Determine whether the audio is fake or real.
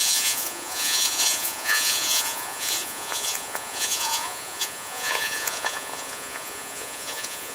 fake